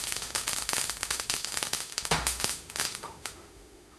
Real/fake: fake